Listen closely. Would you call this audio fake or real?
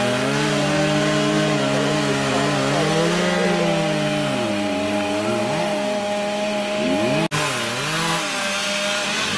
real